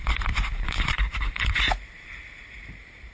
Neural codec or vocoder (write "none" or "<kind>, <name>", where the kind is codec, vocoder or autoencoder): vocoder, BigVGAN v2